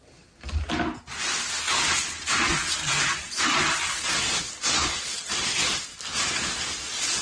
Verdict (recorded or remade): recorded